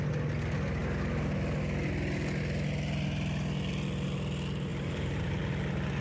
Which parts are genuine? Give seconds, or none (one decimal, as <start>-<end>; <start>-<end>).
0.0-4.7; 5.4-6.0